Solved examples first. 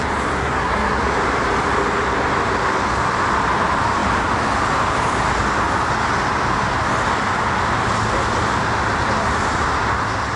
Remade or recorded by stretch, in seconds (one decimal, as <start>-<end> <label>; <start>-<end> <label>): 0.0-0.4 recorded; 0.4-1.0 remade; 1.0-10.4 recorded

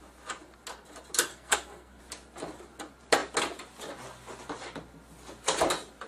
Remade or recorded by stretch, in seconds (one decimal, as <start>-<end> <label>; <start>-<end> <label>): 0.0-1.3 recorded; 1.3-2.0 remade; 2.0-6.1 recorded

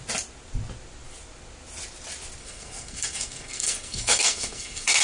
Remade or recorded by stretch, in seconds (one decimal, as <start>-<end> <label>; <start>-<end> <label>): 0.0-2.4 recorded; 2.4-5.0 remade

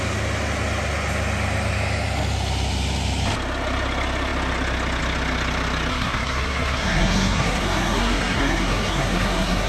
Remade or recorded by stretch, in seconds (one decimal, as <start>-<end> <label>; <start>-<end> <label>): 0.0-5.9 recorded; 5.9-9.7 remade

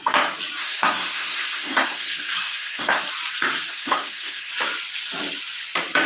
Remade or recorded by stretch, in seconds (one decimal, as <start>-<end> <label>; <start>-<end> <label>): 0.0-0.6 recorded; 0.6-3.0 remade; 3.0-3.7 recorded; 3.7-4.5 remade; 4.5-6.1 recorded